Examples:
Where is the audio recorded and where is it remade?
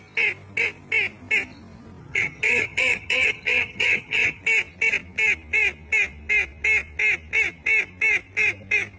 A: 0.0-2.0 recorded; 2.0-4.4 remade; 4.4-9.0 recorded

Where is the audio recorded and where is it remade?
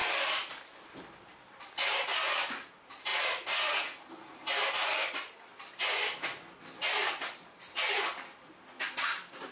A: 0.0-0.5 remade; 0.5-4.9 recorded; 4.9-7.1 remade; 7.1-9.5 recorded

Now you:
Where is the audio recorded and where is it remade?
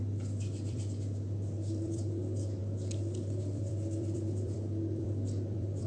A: 0.0-2.6 remade; 2.6-3.4 recorded; 3.4-5.9 remade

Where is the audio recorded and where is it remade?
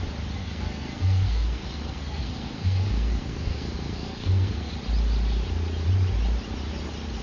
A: 0.0-0.4 recorded; 0.4-4.7 remade; 4.7-7.2 recorded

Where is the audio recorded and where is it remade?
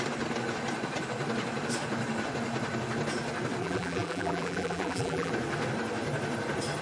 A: 0.0-3.6 recorded; 3.6-5.3 remade; 5.3-6.8 recorded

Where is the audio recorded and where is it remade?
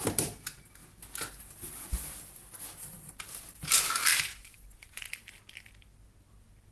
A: 0.0-4.3 recorded; 4.3-5.1 remade; 5.1-6.7 recorded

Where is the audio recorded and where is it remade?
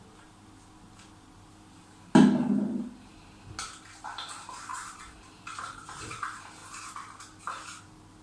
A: 0.0-8.2 recorded